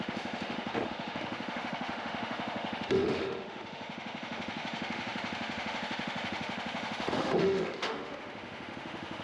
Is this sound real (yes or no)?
no